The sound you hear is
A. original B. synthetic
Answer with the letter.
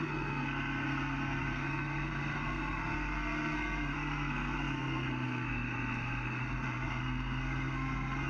B